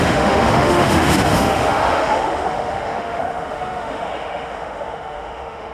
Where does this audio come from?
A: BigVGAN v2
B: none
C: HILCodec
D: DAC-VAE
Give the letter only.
D